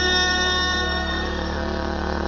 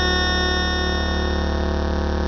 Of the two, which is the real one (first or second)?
second